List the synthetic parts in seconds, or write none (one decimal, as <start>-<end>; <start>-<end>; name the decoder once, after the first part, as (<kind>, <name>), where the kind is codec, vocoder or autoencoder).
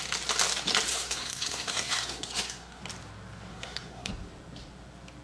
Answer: 0.9-2.8 (codec, SNAC); 3.5-4.1